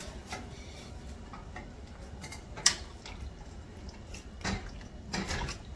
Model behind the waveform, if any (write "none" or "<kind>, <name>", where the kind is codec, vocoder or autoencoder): none